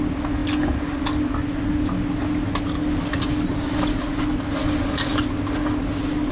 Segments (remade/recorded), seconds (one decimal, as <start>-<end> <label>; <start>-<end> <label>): 0.0-6.3 recorded

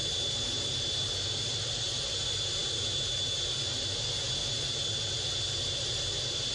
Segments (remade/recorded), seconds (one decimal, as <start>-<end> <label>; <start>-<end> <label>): 0.0-6.5 recorded

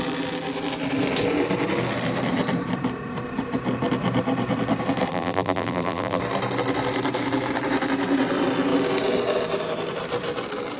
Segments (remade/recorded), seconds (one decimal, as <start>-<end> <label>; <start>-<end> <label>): 0.0-5.1 recorded; 5.1-6.2 remade; 6.2-10.8 recorded

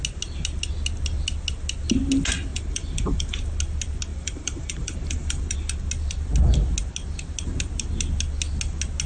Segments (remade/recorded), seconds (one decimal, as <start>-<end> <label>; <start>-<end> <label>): 0.0-2.5 recorded; 2.5-3.4 remade; 3.4-4.1 recorded; 4.1-5.4 remade; 5.4-9.1 recorded

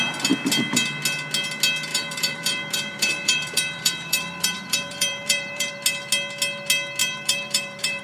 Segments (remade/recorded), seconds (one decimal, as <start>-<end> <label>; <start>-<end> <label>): 0.0-1.9 recorded; 1.9-5.7 remade; 5.7-7.0 recorded; 7.0-8.0 remade